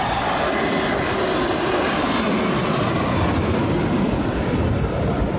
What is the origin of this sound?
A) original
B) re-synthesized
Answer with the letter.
A